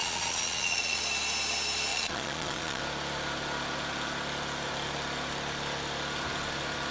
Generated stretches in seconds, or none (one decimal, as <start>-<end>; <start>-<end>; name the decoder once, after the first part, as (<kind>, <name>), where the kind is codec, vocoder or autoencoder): 0.0-1.0 (vocoder, Vocos); 1.9-2.8